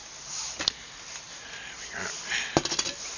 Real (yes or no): yes